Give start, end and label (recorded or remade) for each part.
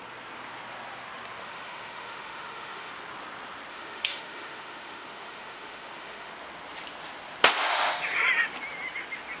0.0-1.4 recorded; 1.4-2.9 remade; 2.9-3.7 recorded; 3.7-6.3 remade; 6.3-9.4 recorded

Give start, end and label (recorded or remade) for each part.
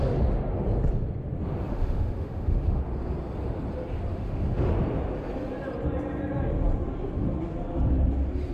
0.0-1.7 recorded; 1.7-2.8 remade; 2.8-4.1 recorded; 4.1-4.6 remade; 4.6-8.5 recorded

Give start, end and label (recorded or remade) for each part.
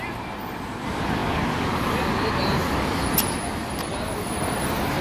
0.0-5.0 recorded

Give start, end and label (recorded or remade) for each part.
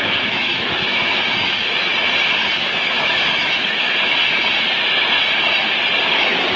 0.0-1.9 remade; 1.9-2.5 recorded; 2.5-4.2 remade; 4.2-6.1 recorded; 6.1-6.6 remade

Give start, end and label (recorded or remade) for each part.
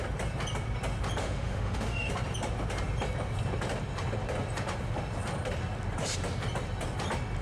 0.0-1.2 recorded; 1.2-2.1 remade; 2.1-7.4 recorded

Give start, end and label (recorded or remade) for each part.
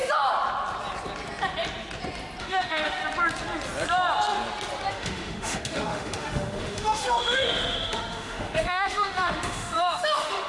0.0-2.4 recorded; 2.4-3.0 remade; 3.0-4.9 recorded; 4.9-10.5 remade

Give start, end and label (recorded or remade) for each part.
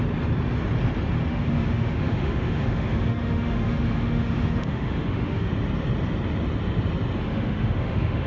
0.0-1.3 recorded; 1.3-5.5 remade; 5.5-7.2 recorded; 7.2-8.3 remade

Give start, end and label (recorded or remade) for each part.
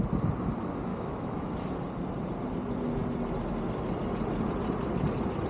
0.0-0.9 recorded; 0.9-1.5 remade; 1.5-5.5 recorded